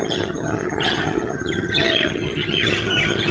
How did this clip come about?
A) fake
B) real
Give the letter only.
A